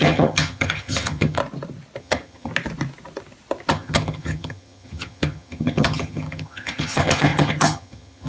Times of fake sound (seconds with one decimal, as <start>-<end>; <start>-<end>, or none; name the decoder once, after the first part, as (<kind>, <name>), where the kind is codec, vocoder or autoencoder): 0.0-1.4 (vocoder, HiFi-GAN); 2.0-2.5; 3.7-8.3

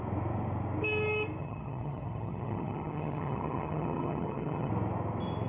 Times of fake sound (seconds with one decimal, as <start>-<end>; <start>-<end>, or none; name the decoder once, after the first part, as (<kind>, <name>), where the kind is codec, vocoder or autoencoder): 1.4-4.7 (vocoder, HiFi-GAN)

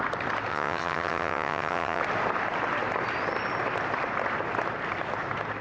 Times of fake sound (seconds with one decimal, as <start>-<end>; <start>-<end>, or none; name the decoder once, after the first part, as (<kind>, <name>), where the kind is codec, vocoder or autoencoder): 0.5-2.0 (vocoder, HiFi-GAN)

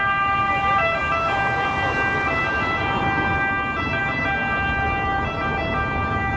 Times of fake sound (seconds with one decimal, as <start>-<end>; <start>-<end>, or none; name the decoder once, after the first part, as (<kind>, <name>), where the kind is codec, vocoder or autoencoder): none

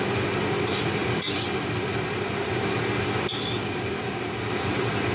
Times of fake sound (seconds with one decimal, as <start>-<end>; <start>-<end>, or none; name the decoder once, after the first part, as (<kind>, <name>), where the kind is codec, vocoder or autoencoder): none

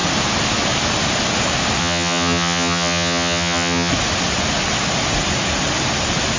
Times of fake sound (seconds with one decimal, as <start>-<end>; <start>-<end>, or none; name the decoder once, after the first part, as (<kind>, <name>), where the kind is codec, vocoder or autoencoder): 1.8-3.9 (vocoder, HiFi-GAN)

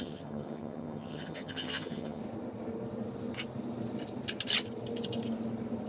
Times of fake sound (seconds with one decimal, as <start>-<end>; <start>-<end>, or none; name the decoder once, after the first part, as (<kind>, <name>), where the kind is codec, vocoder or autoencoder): 0.0-2.2 (vocoder, HiFi-GAN)

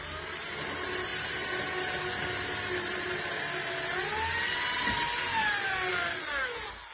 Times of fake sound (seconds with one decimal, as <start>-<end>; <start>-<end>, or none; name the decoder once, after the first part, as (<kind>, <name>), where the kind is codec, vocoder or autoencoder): none